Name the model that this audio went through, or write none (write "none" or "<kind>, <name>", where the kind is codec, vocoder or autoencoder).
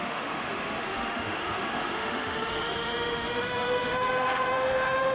autoencoder, DAC-VAE